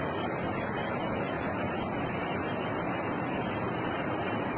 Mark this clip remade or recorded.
remade